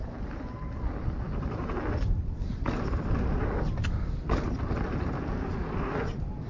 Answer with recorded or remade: recorded